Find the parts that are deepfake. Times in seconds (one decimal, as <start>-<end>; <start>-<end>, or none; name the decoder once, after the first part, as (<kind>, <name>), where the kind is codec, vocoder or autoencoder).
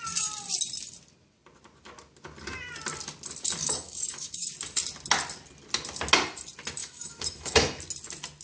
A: 3.6-4.5 (autoencoder, DAC-VAE); 6.8-7.8